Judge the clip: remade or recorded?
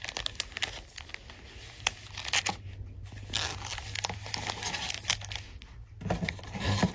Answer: recorded